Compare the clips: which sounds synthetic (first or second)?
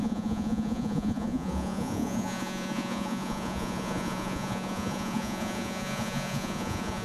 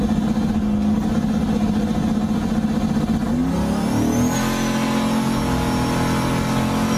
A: first